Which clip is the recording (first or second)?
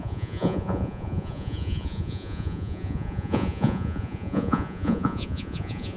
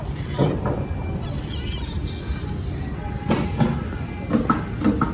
second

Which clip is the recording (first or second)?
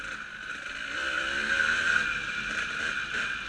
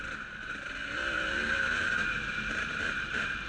first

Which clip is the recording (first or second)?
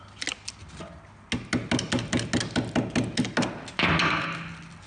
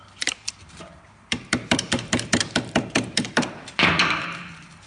first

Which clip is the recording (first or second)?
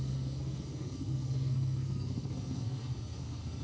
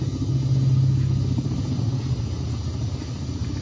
second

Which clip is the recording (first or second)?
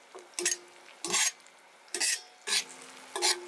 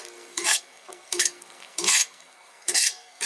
first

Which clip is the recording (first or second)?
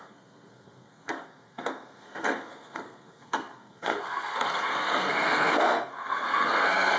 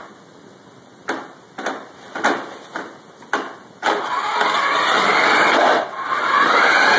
second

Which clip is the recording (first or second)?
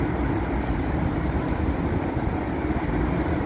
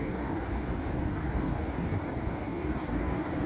first